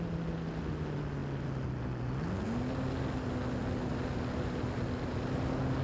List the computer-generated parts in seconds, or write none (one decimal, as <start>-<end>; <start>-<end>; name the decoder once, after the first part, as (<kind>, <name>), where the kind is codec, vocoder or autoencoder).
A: none